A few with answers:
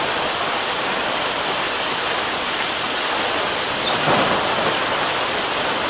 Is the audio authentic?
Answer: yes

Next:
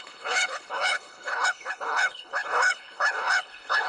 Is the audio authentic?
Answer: no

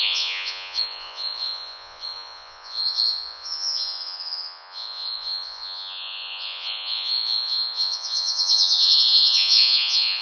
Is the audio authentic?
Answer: no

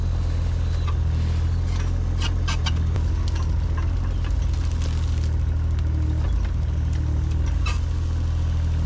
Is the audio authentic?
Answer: yes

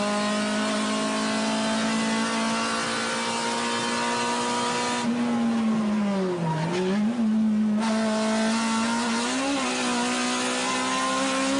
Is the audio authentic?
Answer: yes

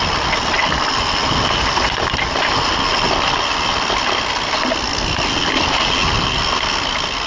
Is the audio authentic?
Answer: yes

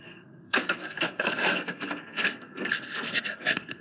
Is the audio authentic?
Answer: no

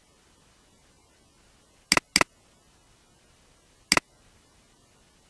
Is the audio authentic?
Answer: yes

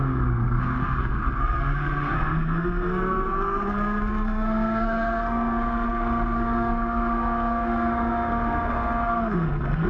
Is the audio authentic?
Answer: no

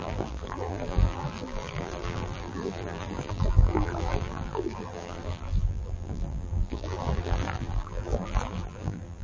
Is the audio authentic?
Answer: no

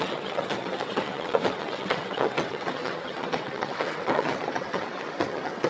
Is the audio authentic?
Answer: no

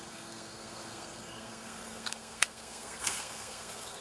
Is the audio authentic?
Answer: no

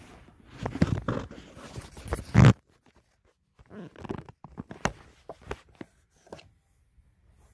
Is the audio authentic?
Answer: yes